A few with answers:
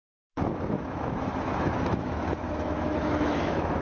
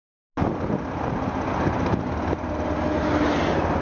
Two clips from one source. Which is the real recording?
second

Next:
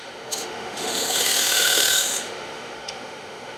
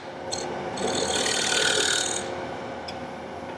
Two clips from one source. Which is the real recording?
second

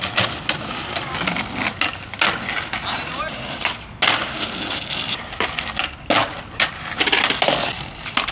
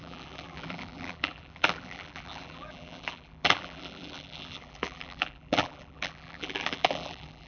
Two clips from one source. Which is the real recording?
first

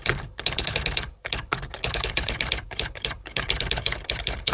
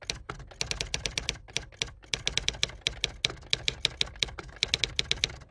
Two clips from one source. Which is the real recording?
second